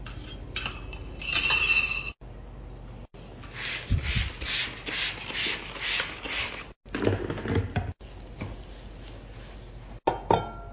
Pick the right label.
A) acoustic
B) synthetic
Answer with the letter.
A